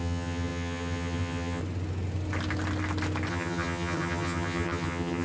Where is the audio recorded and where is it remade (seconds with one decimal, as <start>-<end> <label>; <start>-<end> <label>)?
0.0-1.6 remade; 1.6-3.3 recorded; 3.3-5.2 remade